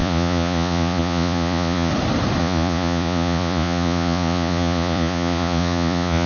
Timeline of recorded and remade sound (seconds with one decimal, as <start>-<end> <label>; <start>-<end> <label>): 0.0-1.9 remade; 1.9-2.4 recorded; 2.4-6.3 remade